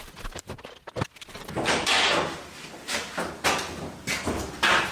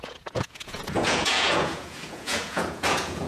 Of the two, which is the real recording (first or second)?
first